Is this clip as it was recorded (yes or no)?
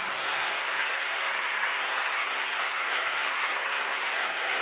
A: no